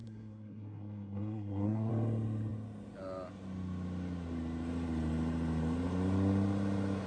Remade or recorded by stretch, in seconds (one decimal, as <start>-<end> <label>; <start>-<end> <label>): 0.0-1.9 remade; 1.9-7.1 recorded